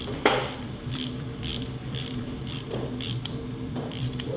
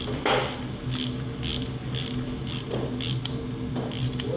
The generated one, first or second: first